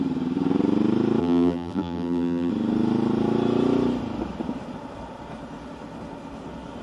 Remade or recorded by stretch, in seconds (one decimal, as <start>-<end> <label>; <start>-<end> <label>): 0.0-1.2 recorded; 1.2-2.5 remade; 2.5-6.8 recorded